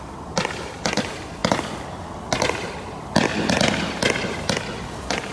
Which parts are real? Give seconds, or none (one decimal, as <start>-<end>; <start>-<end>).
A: 0.0-5.3